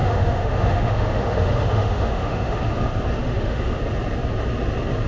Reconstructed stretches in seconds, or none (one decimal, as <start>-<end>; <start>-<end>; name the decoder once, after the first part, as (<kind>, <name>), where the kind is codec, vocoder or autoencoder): 0.0-2.6 (autoencoder, DAC-VAE); 3.2-3.8